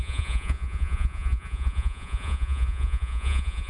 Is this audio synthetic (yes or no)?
yes